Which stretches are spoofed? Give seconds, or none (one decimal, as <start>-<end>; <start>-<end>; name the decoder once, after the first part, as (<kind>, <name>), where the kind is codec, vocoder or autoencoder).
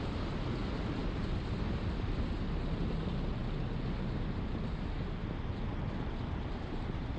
0.0-3.4 (vocoder, BigVGAN v2); 5.6-7.2